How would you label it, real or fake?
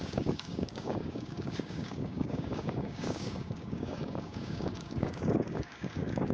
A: fake